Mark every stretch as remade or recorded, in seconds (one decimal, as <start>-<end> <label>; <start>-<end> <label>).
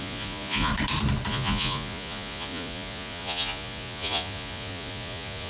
0.0-0.7 remade; 0.7-1.3 recorded; 1.3-5.5 remade